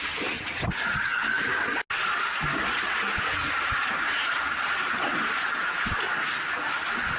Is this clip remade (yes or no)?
no